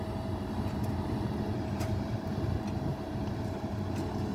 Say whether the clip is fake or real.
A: fake